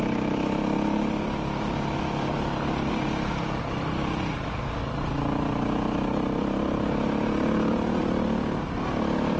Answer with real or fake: real